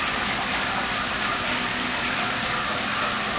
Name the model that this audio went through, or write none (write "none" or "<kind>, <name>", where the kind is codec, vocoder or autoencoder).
none